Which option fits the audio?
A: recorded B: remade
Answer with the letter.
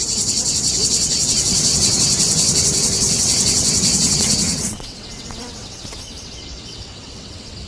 B